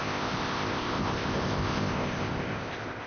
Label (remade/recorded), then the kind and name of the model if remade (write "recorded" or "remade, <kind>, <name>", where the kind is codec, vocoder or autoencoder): remade, codec, ZipCodec